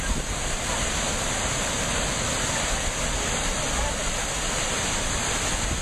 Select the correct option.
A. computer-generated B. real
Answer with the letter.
B